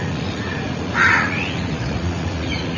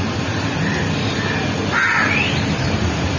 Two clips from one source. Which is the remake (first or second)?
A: first